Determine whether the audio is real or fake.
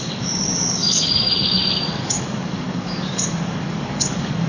fake